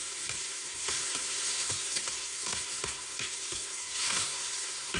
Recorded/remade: remade